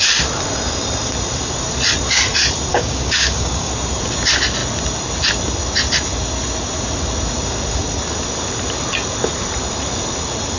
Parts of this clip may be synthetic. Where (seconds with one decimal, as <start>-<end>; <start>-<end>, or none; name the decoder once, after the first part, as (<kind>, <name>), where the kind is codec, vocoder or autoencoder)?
2.7-3.7 (codec, DAC)